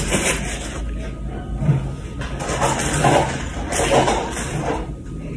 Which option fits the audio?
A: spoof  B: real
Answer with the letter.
B